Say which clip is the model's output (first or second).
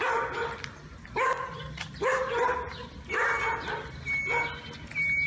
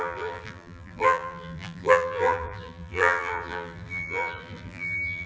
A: second